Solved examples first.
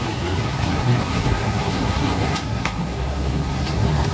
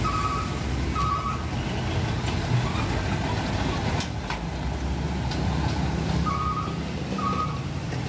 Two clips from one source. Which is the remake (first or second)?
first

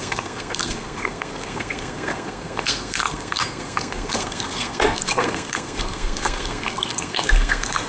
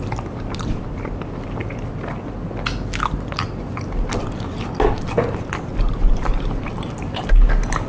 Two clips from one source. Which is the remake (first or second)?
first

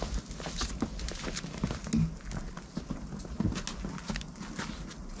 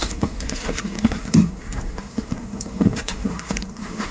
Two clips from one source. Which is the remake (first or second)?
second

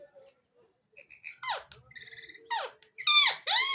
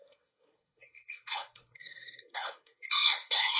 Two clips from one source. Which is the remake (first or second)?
second